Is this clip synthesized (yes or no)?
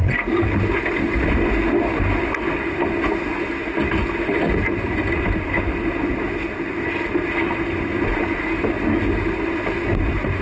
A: no